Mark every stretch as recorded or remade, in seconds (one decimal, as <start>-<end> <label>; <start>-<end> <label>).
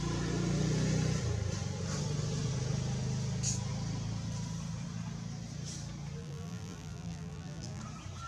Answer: 0.0-6.2 recorded; 6.2-7.8 remade; 7.8-8.3 recorded